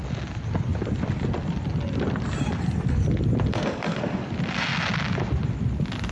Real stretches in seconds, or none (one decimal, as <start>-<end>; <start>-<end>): 0.0-3.5; 4.3-6.1